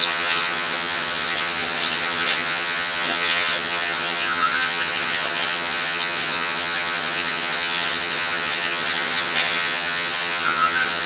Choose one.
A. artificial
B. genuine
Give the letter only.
A